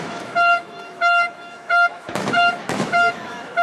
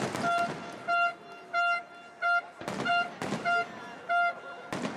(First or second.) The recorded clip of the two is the second